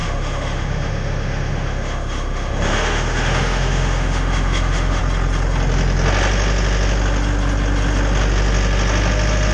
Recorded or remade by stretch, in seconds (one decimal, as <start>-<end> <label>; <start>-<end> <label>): 0.0-5.0 remade; 5.0-9.5 recorded